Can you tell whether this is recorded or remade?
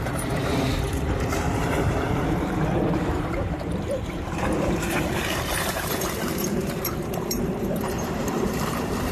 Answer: remade